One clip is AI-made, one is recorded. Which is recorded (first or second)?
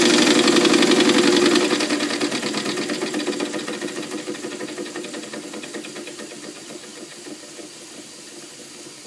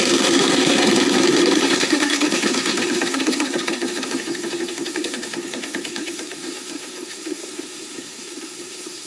first